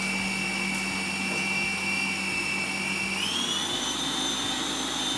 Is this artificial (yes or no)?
no